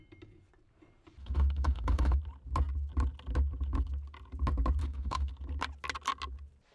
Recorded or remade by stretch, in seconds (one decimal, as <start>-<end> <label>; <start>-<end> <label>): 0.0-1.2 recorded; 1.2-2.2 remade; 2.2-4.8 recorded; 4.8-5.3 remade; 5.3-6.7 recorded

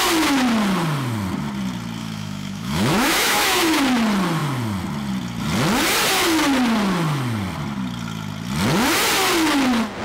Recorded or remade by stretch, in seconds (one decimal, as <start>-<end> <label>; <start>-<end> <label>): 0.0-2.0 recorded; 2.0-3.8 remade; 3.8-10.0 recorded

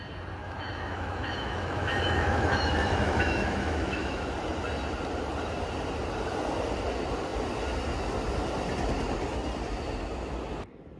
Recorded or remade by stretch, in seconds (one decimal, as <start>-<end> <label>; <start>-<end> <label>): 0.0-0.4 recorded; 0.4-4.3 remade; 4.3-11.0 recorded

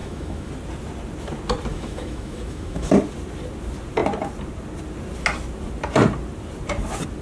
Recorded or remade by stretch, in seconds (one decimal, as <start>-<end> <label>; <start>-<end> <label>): 0.0-0.5 remade; 0.5-1.7 recorded; 1.7-2.9 remade; 2.9-7.2 recorded